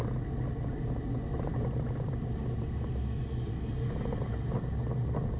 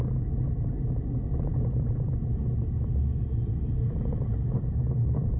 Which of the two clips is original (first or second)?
first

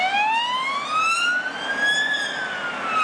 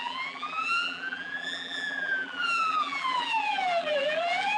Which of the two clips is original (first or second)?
first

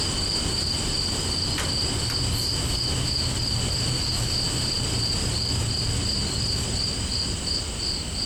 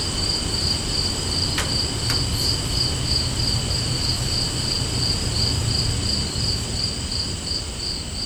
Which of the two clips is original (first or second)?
first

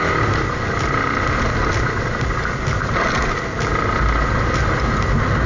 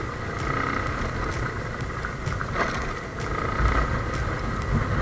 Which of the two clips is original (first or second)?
first